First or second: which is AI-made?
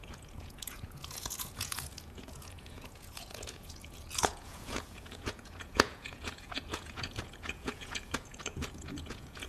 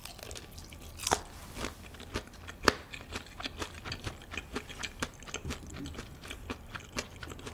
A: first